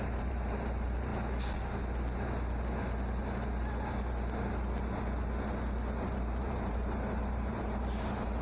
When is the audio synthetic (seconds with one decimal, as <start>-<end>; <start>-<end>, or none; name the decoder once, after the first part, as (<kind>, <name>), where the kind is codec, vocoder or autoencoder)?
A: 0.0-1.1 (vocoder, BigVGAN v2); 6.0-8.4